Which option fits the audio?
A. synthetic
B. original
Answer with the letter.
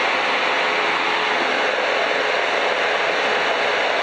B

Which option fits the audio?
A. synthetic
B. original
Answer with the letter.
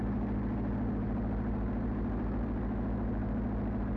B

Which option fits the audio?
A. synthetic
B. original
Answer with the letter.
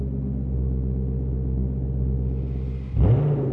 B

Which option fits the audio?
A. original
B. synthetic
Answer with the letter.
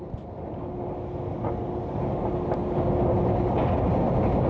A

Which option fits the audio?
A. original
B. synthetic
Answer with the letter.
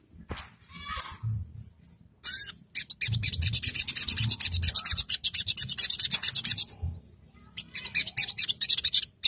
A